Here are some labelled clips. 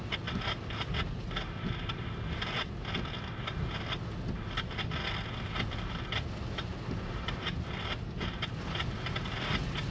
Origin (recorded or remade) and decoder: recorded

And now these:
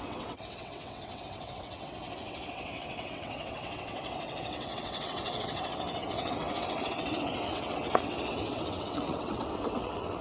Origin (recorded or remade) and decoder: remade, vocoder, WaveNeXt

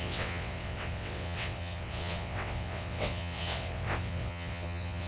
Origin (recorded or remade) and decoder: remade, vocoder, WaveNeXt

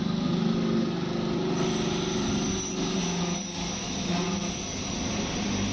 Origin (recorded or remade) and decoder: recorded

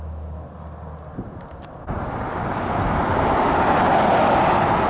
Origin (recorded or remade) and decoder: recorded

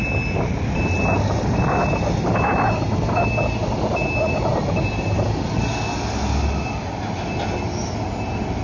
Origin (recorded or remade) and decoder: recorded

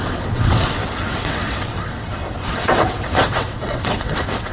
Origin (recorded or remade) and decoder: remade, vocoder, WaveNeXt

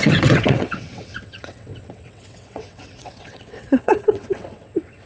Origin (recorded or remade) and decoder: remade, vocoder, WaveNeXt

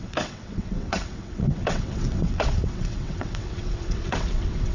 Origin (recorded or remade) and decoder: remade, vocoder, WaveNeXt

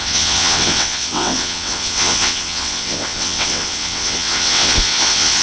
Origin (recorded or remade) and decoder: remade, vocoder, WaveNeXt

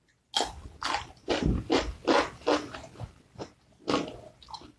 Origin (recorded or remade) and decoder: recorded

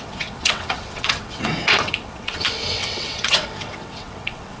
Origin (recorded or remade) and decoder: remade, vocoder, WaveNeXt